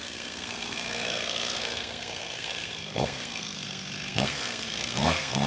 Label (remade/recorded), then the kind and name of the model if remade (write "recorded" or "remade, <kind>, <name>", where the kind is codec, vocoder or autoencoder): remade, codec, SNAC